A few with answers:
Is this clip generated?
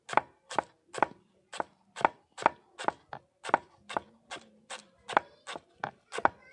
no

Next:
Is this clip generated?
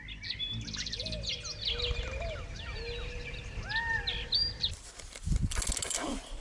no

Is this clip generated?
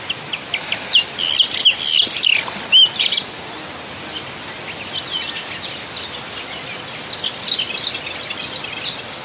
no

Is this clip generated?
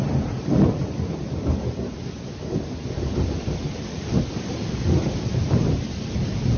yes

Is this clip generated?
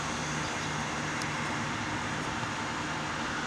no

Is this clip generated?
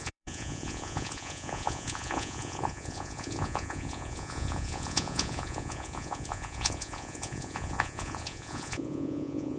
yes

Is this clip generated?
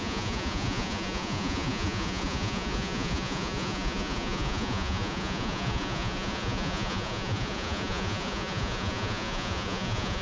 yes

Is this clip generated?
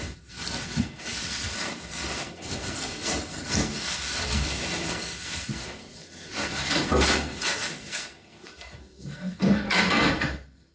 yes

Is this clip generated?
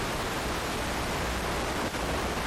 no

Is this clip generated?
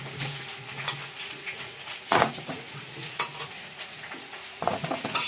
yes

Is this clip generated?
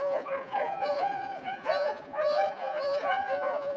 yes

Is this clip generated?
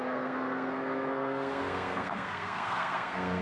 yes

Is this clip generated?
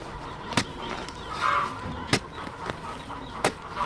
no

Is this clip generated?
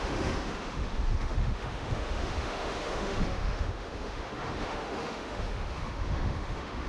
yes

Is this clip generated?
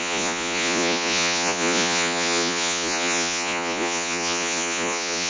yes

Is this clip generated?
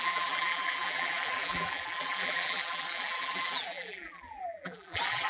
yes